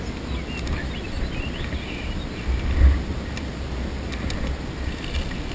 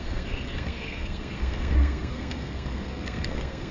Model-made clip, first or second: second